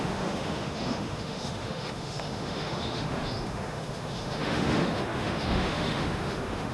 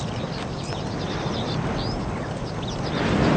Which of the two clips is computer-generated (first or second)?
first